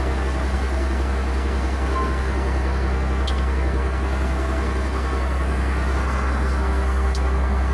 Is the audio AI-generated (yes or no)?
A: yes